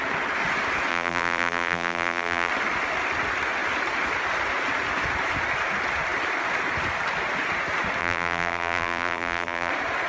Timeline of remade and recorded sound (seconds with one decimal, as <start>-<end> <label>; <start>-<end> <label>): 0.0-0.9 recorded; 0.9-2.5 remade; 2.5-8.0 recorded; 8.0-9.7 remade; 9.7-10.1 recorded